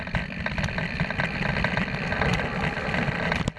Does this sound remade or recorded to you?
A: recorded